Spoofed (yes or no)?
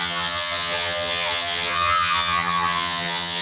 yes